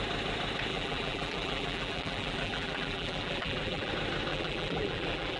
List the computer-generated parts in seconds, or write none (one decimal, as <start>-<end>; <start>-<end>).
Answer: 0.7-3.9; 4.3-5.4